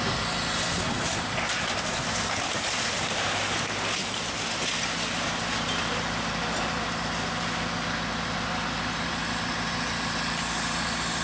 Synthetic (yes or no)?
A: no